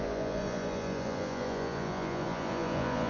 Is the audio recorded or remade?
remade